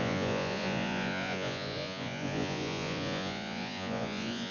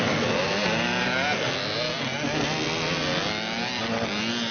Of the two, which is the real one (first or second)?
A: second